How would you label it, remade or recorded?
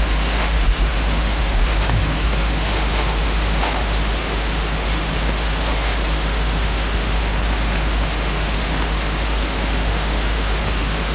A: remade